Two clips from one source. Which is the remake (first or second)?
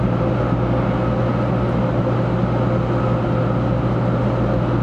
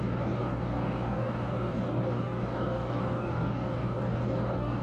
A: second